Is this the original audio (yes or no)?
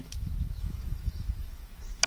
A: no